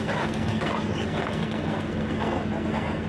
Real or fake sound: fake